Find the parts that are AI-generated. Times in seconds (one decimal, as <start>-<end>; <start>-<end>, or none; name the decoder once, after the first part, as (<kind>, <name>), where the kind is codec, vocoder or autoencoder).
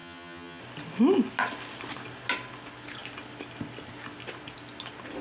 0.0-0.6 (vocoder, HiFi-GAN)